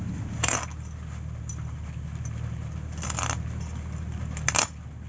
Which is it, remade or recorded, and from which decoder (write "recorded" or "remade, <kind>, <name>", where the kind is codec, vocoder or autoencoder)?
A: recorded